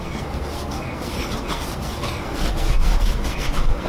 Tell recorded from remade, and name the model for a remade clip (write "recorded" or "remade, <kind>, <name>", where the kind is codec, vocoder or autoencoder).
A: remade, codec, SNAC